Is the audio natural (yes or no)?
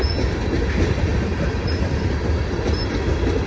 yes